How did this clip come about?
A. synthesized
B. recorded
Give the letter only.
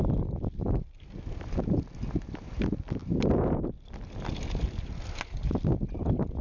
B